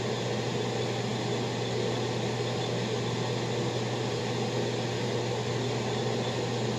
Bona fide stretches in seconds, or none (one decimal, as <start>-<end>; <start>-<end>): 0.0-6.8